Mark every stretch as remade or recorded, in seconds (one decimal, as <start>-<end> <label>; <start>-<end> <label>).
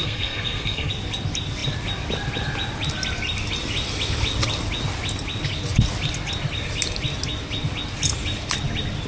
0.0-0.9 remade; 0.9-9.1 recorded